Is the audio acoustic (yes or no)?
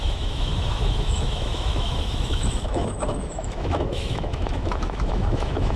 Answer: no